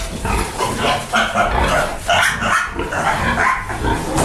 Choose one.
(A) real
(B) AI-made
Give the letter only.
A